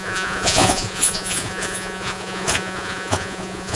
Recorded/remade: remade